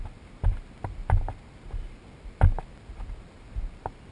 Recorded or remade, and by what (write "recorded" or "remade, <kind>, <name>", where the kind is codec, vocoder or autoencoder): recorded